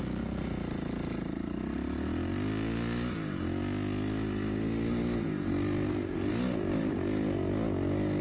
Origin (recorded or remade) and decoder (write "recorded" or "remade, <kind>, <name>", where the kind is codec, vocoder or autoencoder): recorded